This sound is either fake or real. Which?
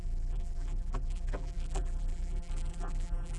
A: fake